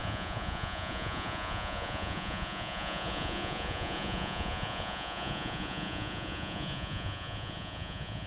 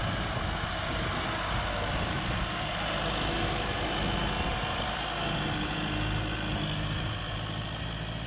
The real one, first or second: second